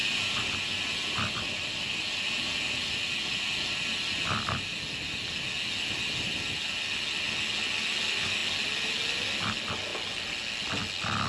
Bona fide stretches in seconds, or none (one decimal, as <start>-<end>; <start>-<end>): 0.0-11.3